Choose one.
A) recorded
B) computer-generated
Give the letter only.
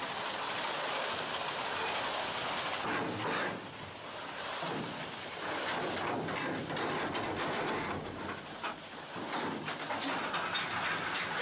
A